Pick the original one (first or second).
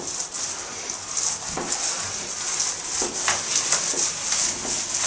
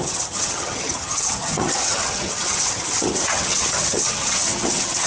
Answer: first